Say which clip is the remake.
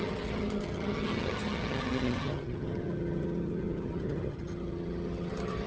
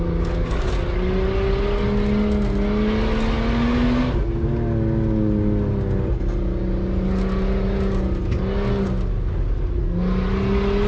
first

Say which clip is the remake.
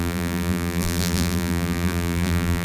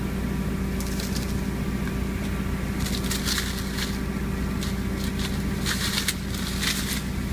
first